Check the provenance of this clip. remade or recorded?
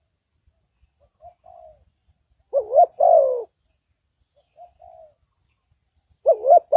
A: recorded